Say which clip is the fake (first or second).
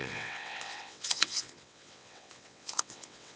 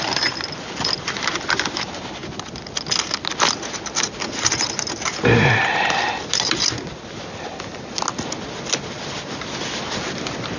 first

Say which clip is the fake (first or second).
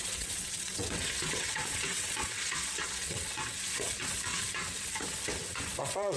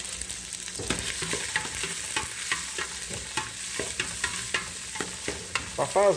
first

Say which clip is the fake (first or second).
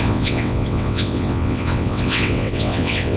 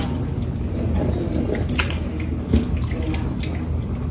first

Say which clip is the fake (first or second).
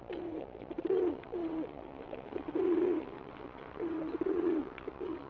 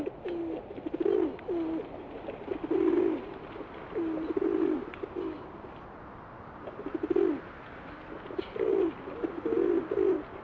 first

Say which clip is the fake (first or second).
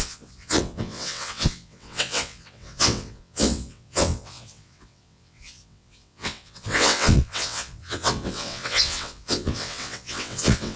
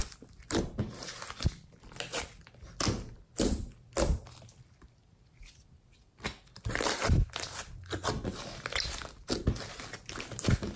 first